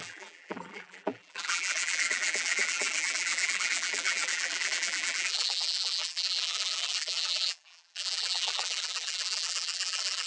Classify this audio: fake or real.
fake